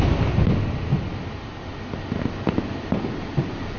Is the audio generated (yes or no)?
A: no